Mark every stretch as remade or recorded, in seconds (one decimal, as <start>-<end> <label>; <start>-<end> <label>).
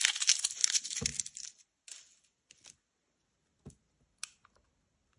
0.0-5.2 recorded